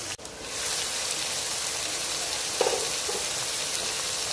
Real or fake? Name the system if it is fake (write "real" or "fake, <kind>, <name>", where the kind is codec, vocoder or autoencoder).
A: real